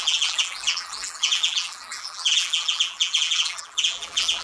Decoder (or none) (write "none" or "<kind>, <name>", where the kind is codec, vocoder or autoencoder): vocoder, BigVGAN v2